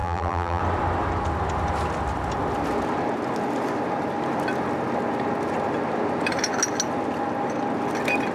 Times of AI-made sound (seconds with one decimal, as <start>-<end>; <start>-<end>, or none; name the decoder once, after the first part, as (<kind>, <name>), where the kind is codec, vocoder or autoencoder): 0.0-0.6 (vocoder, BigVGAN v2)